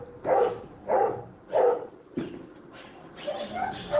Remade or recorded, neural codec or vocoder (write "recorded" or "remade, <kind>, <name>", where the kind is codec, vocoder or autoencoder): remade, vocoder, BigVGAN v2